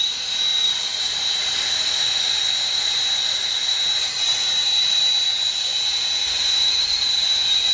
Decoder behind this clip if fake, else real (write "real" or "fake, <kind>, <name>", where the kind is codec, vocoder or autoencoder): real